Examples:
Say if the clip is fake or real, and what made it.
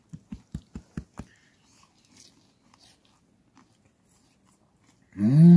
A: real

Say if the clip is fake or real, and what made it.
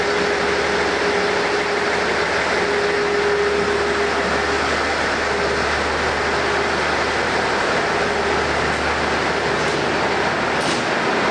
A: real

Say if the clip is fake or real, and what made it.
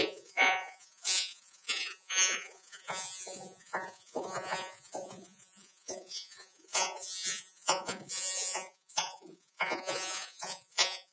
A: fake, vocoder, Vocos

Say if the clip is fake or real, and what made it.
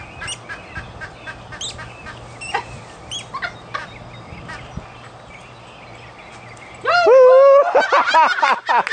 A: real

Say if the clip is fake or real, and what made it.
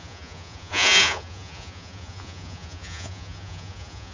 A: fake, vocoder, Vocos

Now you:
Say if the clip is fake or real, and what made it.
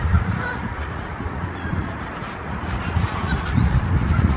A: fake, vocoder, Vocos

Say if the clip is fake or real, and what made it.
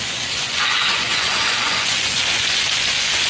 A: fake, vocoder, Vocos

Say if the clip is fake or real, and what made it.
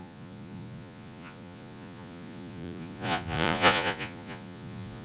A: fake, vocoder, Vocos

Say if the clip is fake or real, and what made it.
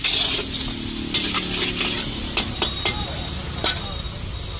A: real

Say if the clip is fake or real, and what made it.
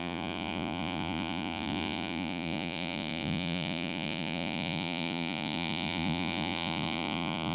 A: fake, vocoder, Vocos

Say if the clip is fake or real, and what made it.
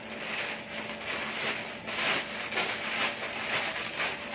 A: real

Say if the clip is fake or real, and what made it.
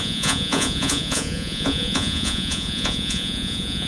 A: fake, vocoder, Vocos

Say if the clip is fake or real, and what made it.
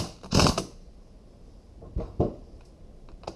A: real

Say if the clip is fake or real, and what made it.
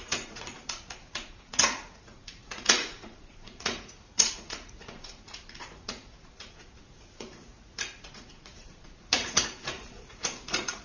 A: fake, vocoder, Vocos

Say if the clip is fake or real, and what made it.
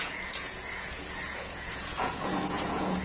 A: fake, vocoder, Vocos